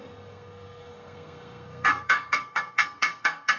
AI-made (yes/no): yes